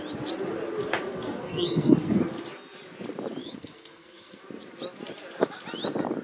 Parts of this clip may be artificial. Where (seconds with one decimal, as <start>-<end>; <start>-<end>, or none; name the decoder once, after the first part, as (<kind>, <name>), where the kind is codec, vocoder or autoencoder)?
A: 1.1-2.2 (codec, SNAC); 3.4-4.4

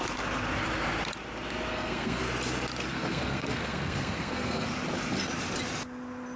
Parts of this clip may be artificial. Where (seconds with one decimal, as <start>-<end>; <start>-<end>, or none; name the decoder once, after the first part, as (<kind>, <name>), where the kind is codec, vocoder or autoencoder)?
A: 1.7-2.2 (codec, SNAC); 2.9-4.7

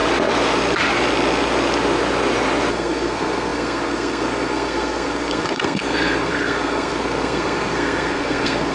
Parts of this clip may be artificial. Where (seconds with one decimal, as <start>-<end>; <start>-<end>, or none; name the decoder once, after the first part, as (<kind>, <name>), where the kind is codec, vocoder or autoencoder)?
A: 2.7-8.7 (codec, SNAC)

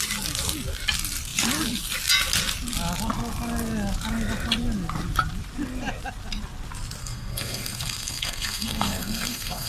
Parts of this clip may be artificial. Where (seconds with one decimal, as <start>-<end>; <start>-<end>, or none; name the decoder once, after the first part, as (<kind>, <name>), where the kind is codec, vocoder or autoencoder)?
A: 7.0-9.7 (codec, SNAC)

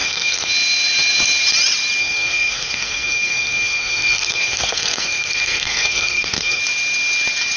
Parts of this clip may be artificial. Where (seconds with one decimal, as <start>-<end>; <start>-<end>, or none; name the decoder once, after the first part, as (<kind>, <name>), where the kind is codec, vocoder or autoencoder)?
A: 0.0-0.5 (codec, SNAC); 2.0-6.6